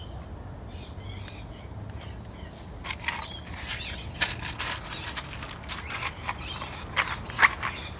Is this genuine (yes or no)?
yes